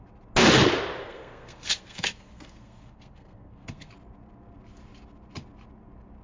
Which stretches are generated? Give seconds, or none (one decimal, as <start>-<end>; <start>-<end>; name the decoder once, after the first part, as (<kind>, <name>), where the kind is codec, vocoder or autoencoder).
1.0-3.9 (codec, SNAC)